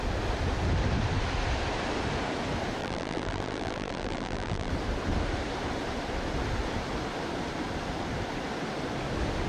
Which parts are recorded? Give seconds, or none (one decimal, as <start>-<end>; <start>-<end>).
0.0-2.8; 4.7-9.5